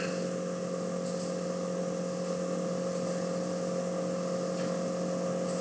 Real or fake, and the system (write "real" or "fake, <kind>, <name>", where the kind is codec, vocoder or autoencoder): real